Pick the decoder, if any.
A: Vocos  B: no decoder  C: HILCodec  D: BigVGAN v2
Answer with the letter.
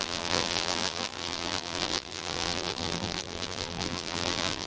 D